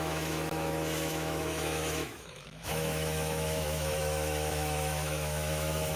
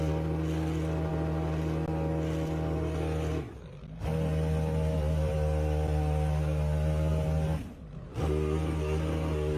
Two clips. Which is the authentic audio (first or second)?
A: second